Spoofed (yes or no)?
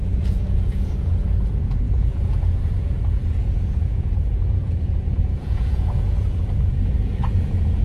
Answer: yes